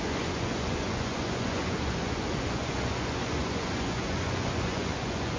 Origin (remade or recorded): remade